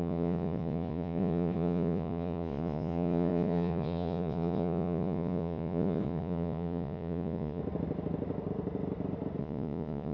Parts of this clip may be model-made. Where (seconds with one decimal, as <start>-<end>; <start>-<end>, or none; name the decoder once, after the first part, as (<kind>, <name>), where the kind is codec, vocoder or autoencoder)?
0.0-7.6 (vocoder, Vocos); 9.4-10.1